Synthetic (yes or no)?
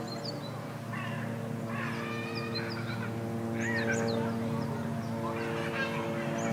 no